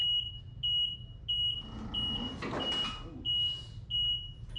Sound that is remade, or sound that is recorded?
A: recorded